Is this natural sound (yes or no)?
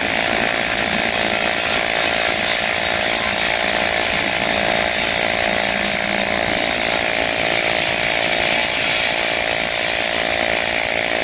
yes